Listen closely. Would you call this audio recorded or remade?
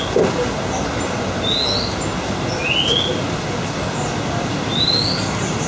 recorded